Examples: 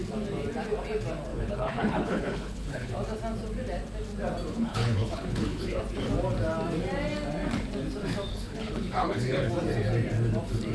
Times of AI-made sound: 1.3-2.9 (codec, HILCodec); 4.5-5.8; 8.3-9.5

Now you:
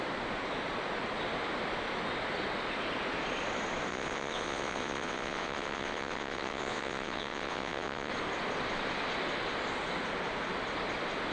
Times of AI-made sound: 3.9-8.1 (vocoder, WaveNeXt)

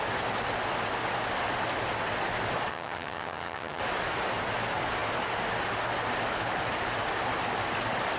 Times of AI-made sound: 2.7-3.8 (vocoder, HiFi-GAN)

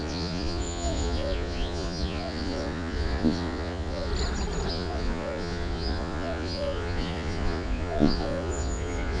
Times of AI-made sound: 0.0-4.1 (vocoder, Vocos); 4.7-9.2

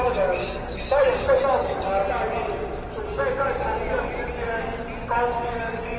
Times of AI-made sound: 0.0-2.0 (codec, DAC); 5.6-6.0